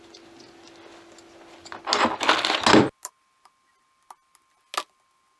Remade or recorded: recorded